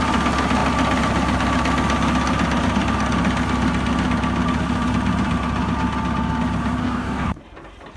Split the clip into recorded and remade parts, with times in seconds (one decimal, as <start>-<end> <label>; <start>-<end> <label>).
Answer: 0.0-6.8 recorded; 6.8-7.4 remade; 7.4-8.0 recorded